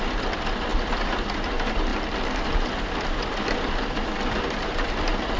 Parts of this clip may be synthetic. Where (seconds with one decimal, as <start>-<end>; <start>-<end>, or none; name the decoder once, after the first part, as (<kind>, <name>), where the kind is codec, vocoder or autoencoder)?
0.7-1.3 (vocoder, BigVGAN v2); 1.9-5.4